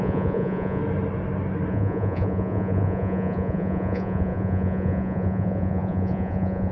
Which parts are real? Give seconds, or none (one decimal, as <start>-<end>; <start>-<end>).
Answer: 0.8-1.7